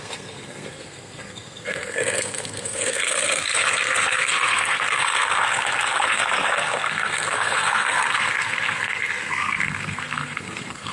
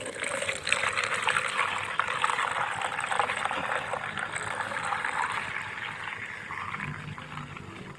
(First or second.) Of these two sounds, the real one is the second